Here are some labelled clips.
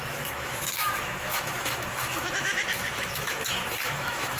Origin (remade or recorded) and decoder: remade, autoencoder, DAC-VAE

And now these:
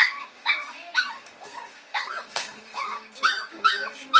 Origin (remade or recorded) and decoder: remade, codec, DAC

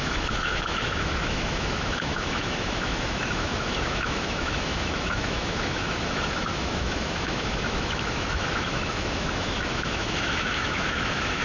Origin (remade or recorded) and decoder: remade, autoencoder, DAC-VAE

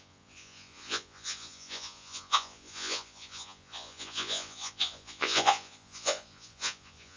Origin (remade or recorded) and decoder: remade, vocoder, Vocos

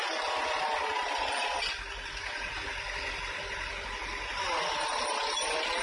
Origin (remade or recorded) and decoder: recorded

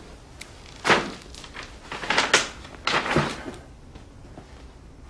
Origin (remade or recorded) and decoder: recorded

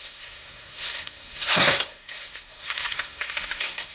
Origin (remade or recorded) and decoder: remade, codec, SNAC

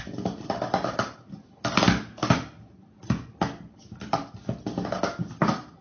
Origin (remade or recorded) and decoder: recorded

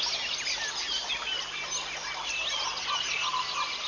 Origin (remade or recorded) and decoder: recorded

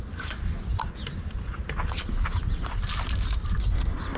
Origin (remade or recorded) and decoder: recorded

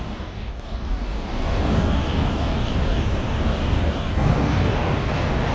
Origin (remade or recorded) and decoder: remade, codec, DAC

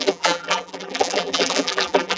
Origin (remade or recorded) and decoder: remade, vocoder, BigVGAN v2